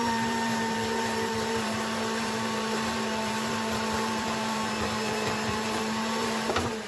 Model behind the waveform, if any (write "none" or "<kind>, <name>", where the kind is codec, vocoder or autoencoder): vocoder, BigVGAN v2